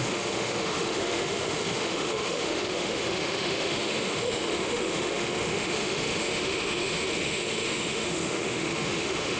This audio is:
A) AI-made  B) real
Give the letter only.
A